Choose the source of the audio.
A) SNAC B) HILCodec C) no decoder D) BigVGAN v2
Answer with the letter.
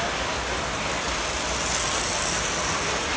C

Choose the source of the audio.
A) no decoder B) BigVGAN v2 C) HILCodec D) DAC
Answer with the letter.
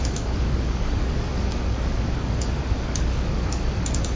D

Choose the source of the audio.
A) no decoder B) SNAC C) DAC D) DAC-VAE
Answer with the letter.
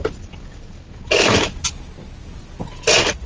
A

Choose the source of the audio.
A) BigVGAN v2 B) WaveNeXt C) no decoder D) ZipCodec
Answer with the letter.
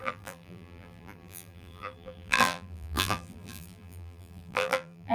A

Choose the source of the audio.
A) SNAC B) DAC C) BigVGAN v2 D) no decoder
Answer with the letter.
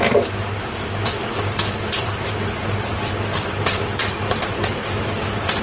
C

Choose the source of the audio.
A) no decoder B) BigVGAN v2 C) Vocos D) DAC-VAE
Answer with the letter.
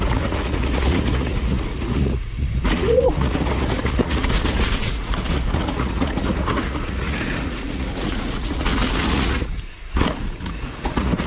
C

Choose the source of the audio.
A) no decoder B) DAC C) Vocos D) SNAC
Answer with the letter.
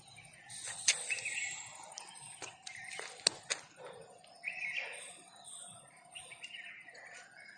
A